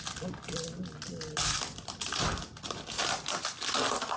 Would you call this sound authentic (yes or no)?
yes